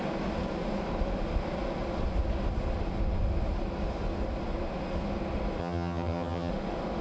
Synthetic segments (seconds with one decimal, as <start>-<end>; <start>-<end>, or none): 5.6-6.5